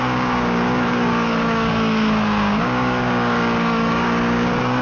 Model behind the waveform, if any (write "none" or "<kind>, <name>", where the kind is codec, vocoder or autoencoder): codec, DAC